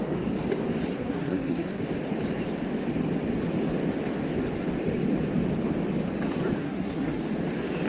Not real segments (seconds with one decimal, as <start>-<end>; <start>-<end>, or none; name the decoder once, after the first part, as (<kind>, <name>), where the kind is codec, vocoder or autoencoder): 0.9-1.8 (codec, SNAC); 6.6-7.2

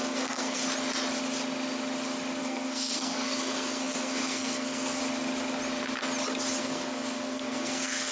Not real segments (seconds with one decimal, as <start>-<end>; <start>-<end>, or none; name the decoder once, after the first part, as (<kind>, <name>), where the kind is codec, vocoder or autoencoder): 0.0-0.6 (codec, SNAC); 2.4-5.0; 6.6-8.1

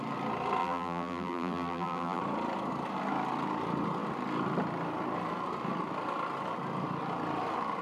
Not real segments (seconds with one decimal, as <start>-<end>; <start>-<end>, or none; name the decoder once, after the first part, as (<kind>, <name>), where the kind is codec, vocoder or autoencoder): 0.6-2.2 (vocoder, BigVGAN v2)

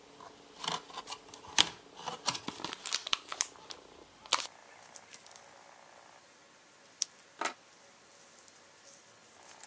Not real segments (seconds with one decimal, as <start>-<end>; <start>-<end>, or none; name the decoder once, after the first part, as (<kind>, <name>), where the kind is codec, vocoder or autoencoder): none

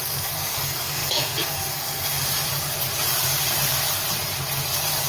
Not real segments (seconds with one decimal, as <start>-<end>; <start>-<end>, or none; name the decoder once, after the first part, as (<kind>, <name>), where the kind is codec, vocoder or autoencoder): 0.0-2.3 (codec, SNAC)

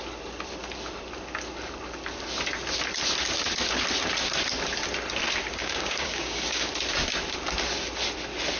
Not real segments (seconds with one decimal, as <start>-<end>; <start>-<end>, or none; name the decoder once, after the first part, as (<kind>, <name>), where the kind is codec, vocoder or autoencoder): 5.5-6.7 (codec, DAC)

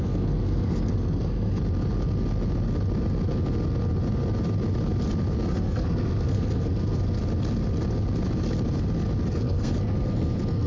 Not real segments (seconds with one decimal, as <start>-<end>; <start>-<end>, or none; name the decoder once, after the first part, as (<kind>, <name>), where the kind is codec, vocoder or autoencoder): 0.0-1.6 (codec, SNAC); 5.5-7.2; 9.3-10.7